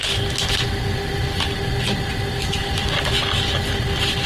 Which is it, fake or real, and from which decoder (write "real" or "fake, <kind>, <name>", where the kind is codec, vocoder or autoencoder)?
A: real